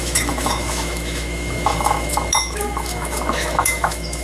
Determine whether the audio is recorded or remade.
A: remade